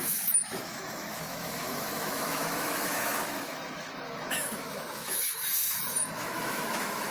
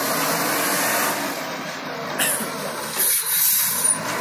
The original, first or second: second